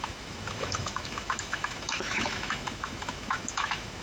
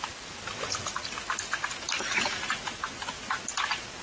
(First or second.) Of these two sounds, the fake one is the first